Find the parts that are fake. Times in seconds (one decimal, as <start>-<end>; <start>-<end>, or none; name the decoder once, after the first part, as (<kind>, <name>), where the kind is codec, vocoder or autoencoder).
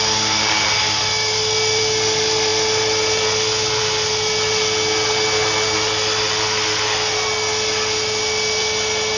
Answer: none